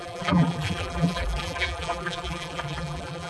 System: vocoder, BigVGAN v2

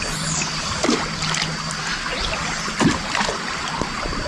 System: none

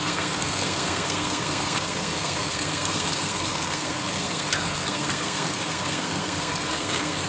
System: codec, SNAC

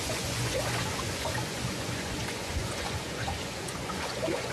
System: vocoder, Vocos